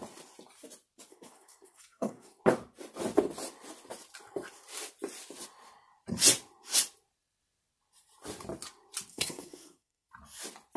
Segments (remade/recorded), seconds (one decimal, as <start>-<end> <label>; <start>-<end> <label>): 0.0-1.1 recorded; 1.1-2.4 remade; 2.4-9.1 recorded; 9.1-10.1 remade; 10.1-10.8 recorded